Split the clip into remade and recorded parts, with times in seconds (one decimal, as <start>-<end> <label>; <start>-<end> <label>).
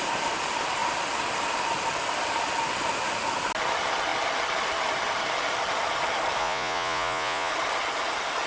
0.0-6.4 recorded; 6.4-7.5 remade; 7.5-8.5 recorded